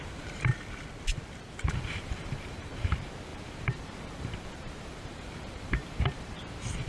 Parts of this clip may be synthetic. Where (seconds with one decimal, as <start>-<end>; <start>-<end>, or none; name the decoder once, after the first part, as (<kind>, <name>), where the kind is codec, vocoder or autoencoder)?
0.0-0.5 (vocoder, BigVGAN v2); 1.7-6.9